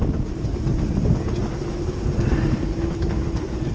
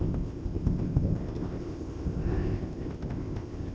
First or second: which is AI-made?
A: second